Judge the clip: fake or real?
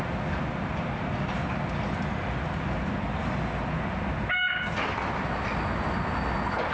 real